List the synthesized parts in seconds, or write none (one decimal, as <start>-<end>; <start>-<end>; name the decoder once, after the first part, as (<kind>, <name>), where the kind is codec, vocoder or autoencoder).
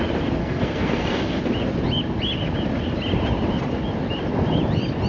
0.4-1.4 (codec, SNAC)